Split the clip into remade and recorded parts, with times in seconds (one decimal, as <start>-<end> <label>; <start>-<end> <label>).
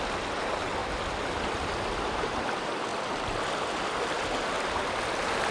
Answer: 0.0-5.5 recorded